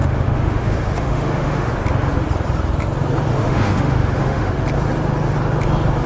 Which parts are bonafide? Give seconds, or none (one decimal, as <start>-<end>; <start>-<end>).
1.7-3.3; 4.5-6.1